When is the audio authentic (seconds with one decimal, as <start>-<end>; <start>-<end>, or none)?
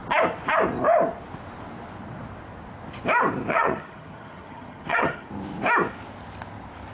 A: 0.0-3.5; 5.3-6.9